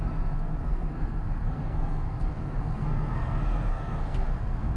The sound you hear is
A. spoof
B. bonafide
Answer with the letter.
A